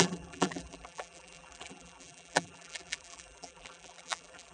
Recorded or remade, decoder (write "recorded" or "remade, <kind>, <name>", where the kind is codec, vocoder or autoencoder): remade, vocoder, BigVGAN v2